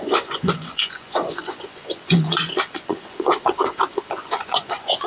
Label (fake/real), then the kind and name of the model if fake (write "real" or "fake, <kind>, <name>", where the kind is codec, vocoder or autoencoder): fake, vocoder, Vocos